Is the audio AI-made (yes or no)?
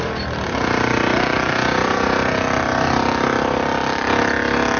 no